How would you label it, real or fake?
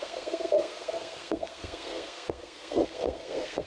fake